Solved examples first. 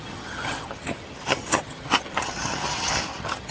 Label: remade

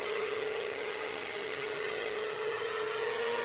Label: remade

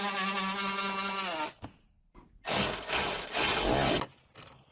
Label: recorded